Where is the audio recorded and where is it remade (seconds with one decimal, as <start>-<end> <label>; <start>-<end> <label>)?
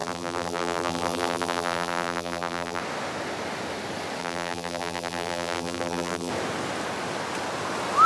0.0-2.8 remade; 2.8-4.2 recorded; 4.2-6.3 remade; 6.3-8.1 recorded